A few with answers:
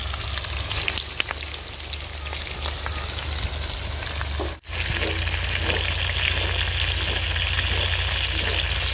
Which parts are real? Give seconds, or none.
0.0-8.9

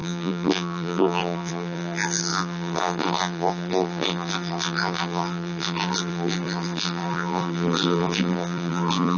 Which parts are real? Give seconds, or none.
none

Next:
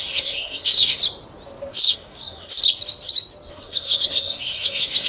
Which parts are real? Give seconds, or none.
1.0-1.7; 2.6-3.5

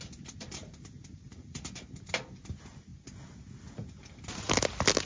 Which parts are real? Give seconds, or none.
0.0-0.6; 1.6-5.1